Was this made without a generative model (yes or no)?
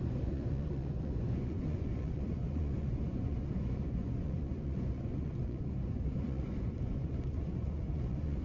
no